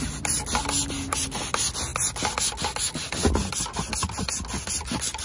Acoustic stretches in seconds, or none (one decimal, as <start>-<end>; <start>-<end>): 0.0-5.2